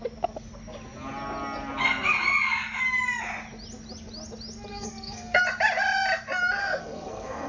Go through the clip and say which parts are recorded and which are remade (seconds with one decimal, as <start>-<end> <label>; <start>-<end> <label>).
0.0-4.7 recorded; 4.7-5.4 remade; 5.4-6.6 recorded; 6.6-7.5 remade